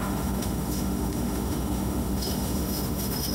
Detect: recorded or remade remade